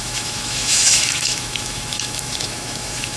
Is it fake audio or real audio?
fake